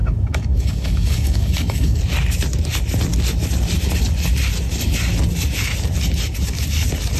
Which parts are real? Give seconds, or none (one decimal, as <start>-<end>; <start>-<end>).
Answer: 2.0-7.2